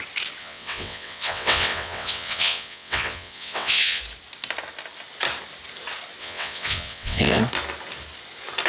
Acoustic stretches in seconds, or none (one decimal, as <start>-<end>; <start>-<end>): 0.0-0.4; 4.0-6.2; 7.4-8.7